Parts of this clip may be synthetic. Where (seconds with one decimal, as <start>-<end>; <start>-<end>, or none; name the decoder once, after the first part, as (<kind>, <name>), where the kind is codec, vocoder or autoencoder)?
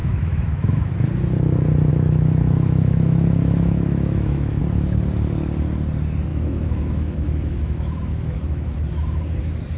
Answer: 0.0-0.9 (autoencoder, DAC-VAE); 1.9-4.6; 6.3-8.8